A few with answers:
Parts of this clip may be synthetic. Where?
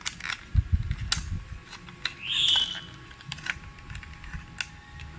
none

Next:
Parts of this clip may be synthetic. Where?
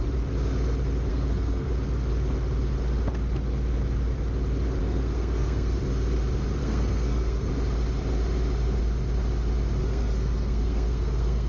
1.1-1.7 (codec, SNAC); 4.8-5.8; 6.6-7.5; 9.8-11.5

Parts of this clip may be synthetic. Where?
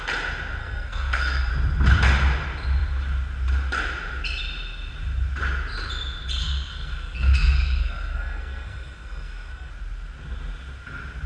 0.6-1.5 (codec, SNAC); 6.4-9.7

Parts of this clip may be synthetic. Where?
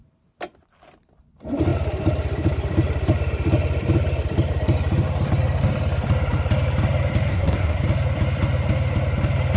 7.3-7.8 (codec, SNAC)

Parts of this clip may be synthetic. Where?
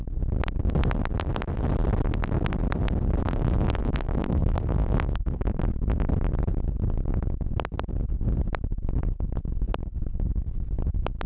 3.2-5.6 (codec, SNAC)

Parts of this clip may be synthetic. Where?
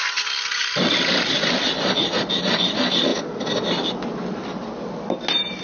none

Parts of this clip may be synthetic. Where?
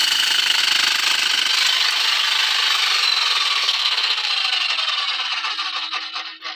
0.0-0.6 (codec, SNAC); 3.6-4.3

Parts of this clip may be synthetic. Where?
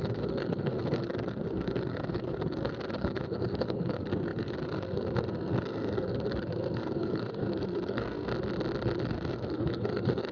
0.0-8.3 (codec, SNAC); 9.1-10.3